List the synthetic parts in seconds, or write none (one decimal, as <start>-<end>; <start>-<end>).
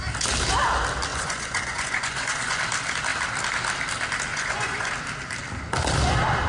1.1-2.6; 4.3-4.9